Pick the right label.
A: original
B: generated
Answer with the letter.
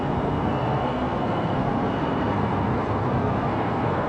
B